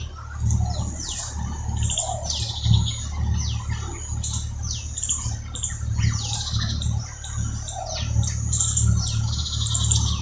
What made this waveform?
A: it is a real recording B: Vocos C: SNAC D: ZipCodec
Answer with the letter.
A